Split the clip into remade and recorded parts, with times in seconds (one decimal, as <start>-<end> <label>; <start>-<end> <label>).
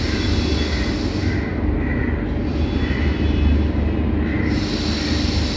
0.0-5.6 recorded